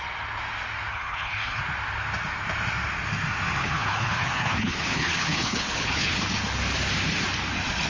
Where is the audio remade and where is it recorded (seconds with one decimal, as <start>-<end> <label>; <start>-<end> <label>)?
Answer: 0.0-0.9 recorded; 0.9-1.6 remade; 1.6-3.6 recorded; 3.6-6.2 remade; 6.2-7.9 recorded